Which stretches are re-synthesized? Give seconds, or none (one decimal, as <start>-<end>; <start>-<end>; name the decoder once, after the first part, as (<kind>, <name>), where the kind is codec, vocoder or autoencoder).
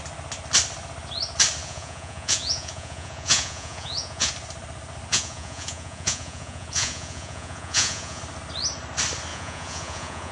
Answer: 1.6-4.3 (vocoder, Vocos); 5.1-8.2; 9.3-10.3